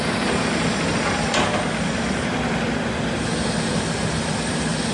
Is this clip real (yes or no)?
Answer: yes